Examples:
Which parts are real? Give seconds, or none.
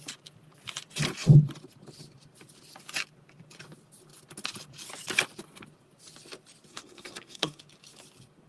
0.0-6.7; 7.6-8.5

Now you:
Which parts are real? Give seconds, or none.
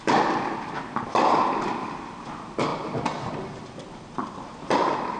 0.0-5.2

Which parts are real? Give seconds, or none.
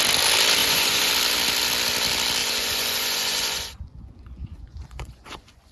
0.0-0.6; 1.1-2.4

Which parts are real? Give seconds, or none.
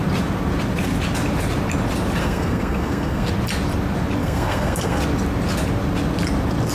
0.0-2.2; 3.3-4.2; 5.0-6.7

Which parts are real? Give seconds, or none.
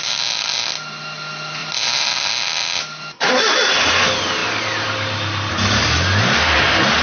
0.0-1.6; 2.3-7.0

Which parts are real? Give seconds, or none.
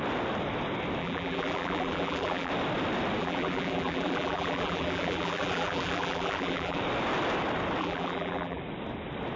0.0-1.0; 2.5-3.2; 6.8-7.8; 8.6-9.4